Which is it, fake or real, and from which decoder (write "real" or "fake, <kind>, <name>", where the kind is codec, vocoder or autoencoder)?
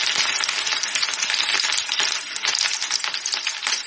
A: real